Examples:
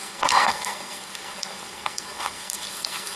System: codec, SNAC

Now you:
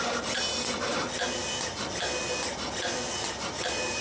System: none